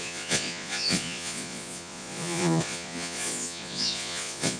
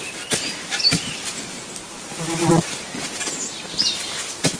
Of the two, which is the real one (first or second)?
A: second